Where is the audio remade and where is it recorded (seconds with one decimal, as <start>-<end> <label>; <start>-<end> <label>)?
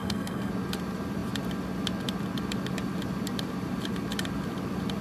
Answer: 0.0-0.5 remade; 0.5-5.0 recorded